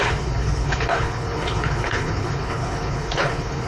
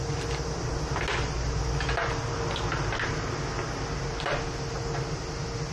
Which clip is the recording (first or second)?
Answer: second